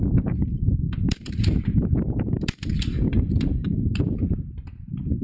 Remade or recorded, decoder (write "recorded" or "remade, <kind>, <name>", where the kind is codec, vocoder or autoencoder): remade, vocoder, BigVGAN v2